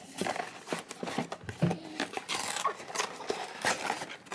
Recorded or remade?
recorded